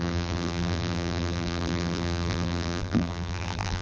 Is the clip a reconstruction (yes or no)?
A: yes